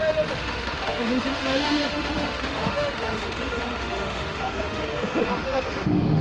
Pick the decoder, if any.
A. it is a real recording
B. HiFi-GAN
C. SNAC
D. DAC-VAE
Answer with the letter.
D